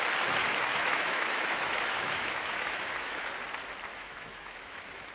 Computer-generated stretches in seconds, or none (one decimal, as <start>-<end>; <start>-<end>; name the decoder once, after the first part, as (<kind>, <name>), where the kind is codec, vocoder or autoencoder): 0.4-3.3 (autoencoder, DAC-VAE); 3.9-5.1

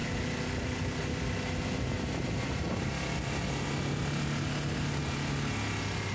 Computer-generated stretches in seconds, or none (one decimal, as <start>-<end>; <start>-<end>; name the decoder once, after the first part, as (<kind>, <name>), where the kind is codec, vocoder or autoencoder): none

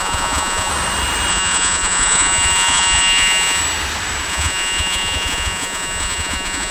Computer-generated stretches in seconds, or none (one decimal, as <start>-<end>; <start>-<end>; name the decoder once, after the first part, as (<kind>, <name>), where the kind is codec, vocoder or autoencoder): 0.0-0.7 (vocoder, Vocos); 1.3-3.6; 4.3-6.7